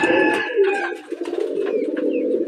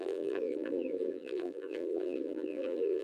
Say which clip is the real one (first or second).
first